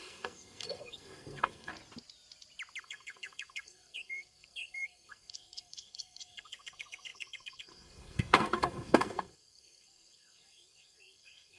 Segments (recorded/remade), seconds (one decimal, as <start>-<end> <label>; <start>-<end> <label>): 0.0-1.7 remade; 1.7-2.8 recorded; 2.8-11.6 remade